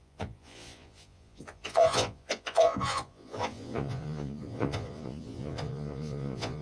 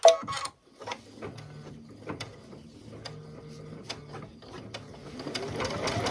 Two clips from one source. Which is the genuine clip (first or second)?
second